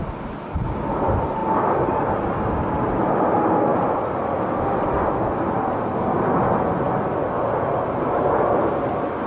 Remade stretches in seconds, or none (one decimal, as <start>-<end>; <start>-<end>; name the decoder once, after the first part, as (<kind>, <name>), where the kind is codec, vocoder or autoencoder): none